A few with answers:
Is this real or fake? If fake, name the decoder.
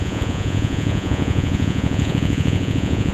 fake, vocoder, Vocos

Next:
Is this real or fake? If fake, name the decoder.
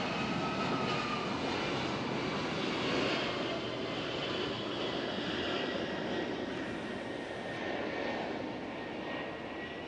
real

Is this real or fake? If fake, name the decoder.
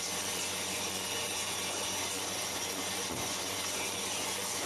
fake, vocoder, Vocos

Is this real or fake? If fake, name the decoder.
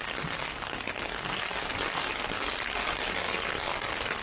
real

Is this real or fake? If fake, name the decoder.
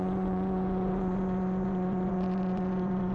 fake, vocoder, Vocos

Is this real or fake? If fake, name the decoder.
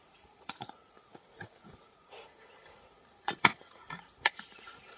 fake, vocoder, Vocos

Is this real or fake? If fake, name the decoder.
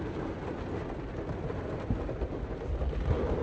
real